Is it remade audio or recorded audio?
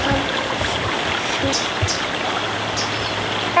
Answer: recorded